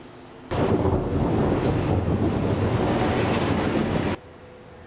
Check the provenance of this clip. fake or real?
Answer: real